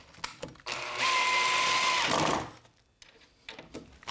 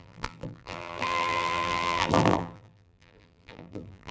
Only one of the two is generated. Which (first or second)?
second